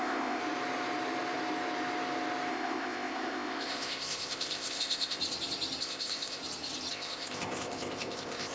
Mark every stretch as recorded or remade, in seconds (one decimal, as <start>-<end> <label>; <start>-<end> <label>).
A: 0.0-0.4 remade; 0.4-2.5 recorded; 2.5-5.2 remade; 5.2-5.8 recorded; 5.8-6.4 remade; 6.4-6.9 recorded; 6.9-8.5 remade